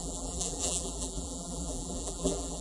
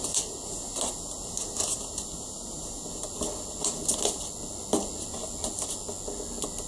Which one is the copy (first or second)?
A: first